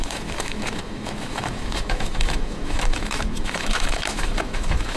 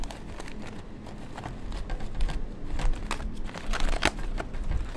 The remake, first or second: first